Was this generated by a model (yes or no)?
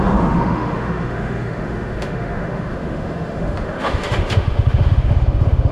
yes